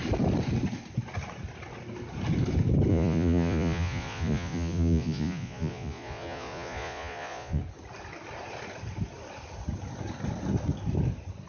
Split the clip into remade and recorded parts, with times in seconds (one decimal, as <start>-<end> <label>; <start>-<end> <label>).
0.0-2.9 recorded; 2.9-7.6 remade; 7.6-11.5 recorded